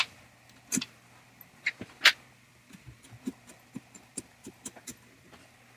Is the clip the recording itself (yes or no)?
yes